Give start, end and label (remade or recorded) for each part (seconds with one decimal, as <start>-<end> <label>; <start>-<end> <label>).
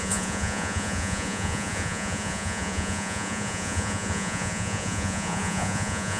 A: 0.0-6.2 remade